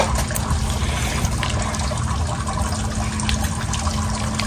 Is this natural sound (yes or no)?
yes